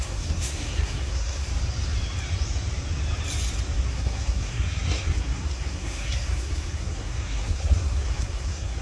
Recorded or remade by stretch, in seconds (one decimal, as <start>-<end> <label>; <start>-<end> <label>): 0.0-1.5 remade; 1.5-3.9 recorded; 3.9-8.8 remade